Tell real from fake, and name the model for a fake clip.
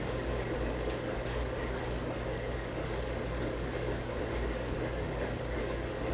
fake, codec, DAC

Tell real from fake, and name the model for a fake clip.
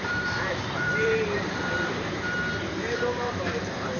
fake, vocoder, BigVGAN v2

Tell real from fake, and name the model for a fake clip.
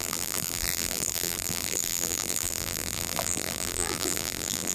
fake, vocoder, BigVGAN v2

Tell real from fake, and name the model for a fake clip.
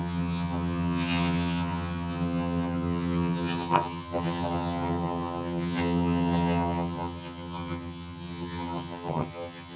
fake, vocoder, HiFi-GAN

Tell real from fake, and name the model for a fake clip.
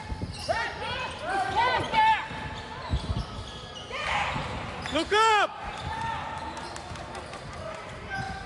real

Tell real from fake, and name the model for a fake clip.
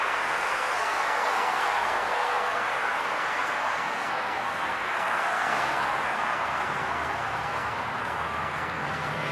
fake, codec, SNAC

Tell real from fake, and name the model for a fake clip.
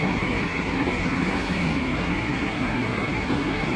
fake, codec, SNAC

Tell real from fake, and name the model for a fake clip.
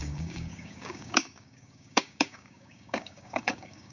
fake, codec, DAC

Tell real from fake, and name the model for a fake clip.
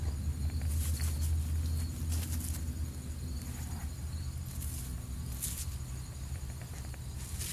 real